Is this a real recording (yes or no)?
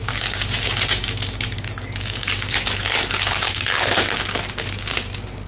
no